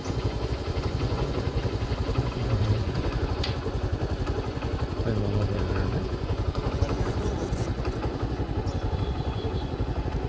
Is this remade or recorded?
remade